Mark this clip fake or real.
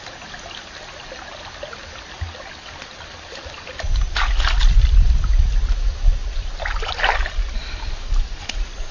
real